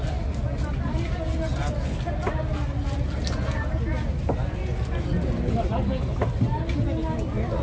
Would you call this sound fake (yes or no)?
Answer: no